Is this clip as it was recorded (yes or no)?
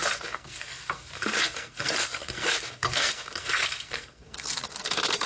no